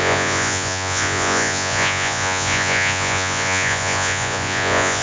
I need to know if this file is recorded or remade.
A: remade